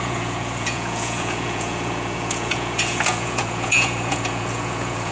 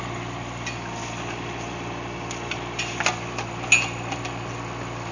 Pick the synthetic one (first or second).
first